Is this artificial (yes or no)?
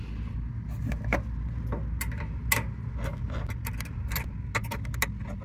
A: no